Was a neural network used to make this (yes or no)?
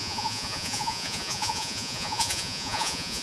yes